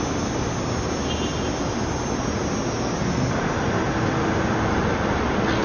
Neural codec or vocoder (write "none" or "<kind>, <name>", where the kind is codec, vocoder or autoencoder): none